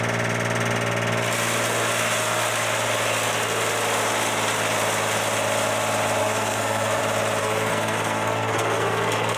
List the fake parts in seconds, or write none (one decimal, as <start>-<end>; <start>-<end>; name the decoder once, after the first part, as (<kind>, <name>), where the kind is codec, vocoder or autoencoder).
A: 6.2-7.0 (codec, SNAC); 7.4-9.4